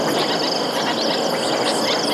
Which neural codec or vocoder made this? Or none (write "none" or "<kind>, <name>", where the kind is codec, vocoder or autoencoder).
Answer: none